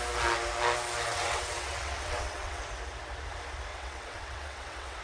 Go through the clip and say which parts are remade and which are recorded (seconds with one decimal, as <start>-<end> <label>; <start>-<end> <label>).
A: 0.0-1.1 recorded; 1.1-2.6 remade; 2.6-3.7 recorded; 3.7-5.0 remade